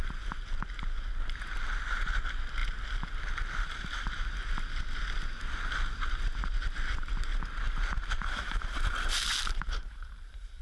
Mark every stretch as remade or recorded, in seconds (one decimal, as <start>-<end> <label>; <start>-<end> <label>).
0.0-7.3 recorded; 7.3-10.6 remade